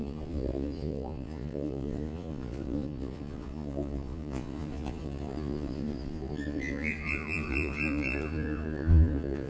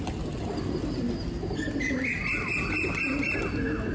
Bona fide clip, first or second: second